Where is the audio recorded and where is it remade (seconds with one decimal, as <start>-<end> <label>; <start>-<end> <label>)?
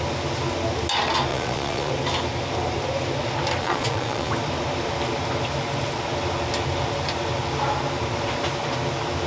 0.0-1.3 recorded; 1.3-1.9 remade; 1.9-3.6 recorded; 3.6-4.3 remade; 4.3-9.3 recorded